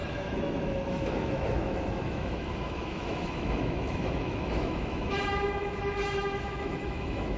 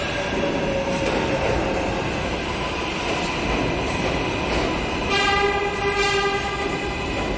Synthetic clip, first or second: first